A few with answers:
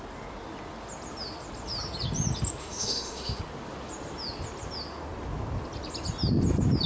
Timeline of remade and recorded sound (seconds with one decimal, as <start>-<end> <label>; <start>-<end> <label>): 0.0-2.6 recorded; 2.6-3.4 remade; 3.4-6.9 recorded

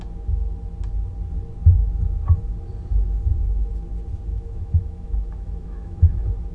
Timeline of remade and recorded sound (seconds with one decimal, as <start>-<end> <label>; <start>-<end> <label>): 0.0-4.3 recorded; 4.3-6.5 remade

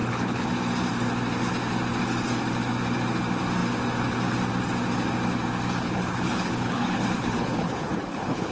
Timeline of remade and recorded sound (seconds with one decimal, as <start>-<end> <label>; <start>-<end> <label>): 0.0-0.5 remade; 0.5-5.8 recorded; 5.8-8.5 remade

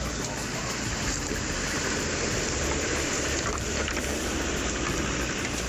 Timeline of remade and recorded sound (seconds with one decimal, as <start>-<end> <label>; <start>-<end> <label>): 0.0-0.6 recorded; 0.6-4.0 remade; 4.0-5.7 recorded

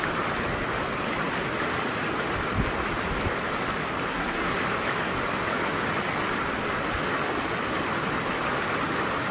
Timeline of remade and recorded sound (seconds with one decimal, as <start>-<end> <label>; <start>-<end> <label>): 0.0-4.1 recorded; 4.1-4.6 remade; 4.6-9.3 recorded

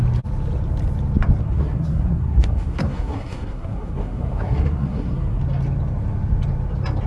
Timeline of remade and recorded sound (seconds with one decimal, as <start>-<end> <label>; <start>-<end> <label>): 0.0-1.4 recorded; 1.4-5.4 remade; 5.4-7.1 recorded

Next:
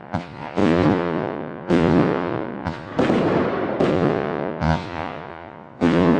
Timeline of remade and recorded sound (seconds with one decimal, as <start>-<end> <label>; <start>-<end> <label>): 0.0-2.9 remade; 2.9-3.9 recorded; 3.9-6.2 remade

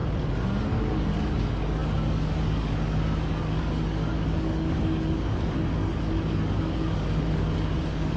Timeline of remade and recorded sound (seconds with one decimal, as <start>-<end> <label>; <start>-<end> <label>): 0.0-0.6 recorded; 0.6-8.2 remade